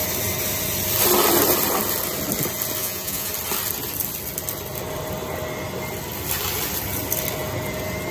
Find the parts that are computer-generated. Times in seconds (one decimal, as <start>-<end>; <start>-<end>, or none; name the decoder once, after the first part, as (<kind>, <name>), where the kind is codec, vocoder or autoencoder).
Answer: 2.8-3.3 (vocoder, Vocos)